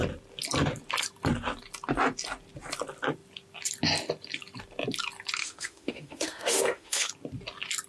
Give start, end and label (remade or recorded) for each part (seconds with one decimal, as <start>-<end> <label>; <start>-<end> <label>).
0.0-5.4 recorded; 5.4-7.1 remade; 7.1-7.9 recorded